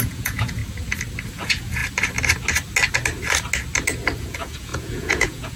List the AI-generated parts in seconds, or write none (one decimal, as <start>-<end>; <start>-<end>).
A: 0.0-0.6; 1.3-1.8; 4.2-5.6